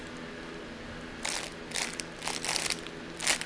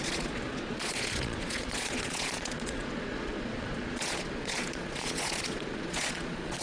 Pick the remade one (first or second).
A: second